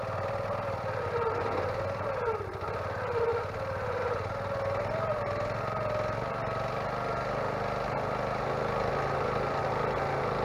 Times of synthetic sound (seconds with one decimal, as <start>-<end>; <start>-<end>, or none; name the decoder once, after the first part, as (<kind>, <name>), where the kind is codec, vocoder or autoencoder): none